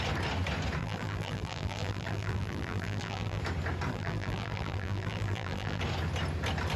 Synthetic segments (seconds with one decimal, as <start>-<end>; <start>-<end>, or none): 0.8-3.4; 3.9-5.8